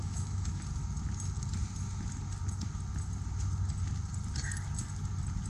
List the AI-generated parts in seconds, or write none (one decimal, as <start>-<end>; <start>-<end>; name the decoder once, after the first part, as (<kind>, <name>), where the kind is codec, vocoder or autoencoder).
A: 0.0-0.6 (autoencoder, DAC-VAE)